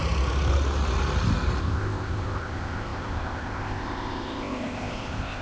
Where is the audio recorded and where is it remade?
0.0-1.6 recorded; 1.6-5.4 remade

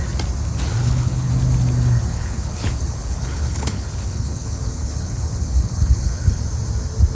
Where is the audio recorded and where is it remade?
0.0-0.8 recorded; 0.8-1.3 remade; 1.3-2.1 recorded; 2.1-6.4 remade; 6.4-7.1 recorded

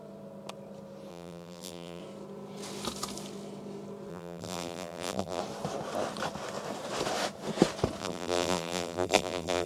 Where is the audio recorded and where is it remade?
0.0-1.1 recorded; 1.1-2.0 remade; 2.0-4.1 recorded; 4.1-5.4 remade; 5.4-8.0 recorded; 8.0-9.7 remade